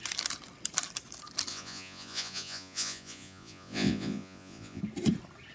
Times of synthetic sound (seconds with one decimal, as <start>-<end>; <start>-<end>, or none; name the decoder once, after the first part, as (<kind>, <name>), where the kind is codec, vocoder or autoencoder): 1.5-4.8 (vocoder, Vocos)